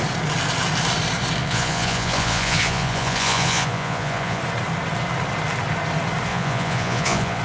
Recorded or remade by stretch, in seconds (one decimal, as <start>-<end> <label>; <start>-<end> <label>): 0.0-1.4 recorded; 1.4-4.4 remade; 4.4-6.3 recorded; 6.3-7.4 remade